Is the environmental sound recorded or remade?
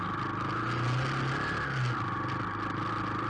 recorded